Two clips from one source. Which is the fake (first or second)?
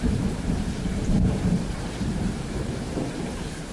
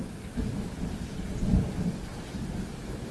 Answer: first